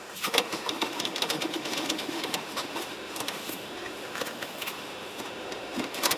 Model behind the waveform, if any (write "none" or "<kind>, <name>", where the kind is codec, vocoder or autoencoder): autoencoder, DAC-VAE